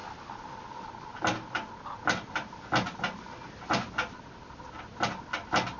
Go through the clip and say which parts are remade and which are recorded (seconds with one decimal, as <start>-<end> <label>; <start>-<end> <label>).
0.0-5.8 recorded